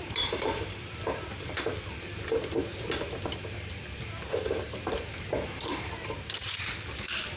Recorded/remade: remade